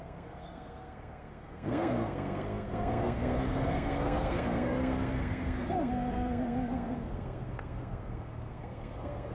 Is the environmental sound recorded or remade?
remade